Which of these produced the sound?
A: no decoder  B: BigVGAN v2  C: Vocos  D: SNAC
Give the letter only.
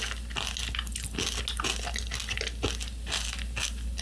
A